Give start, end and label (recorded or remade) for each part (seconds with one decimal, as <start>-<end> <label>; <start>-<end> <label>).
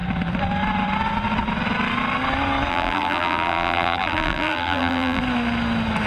0.0-2.7 recorded; 2.7-5.2 remade; 5.2-6.1 recorded